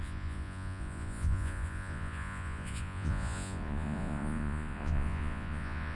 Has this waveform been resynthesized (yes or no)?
yes